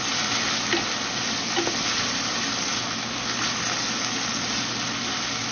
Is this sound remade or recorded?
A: recorded